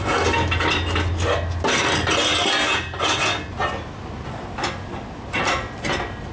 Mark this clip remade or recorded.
recorded